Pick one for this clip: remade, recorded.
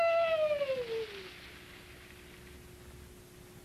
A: recorded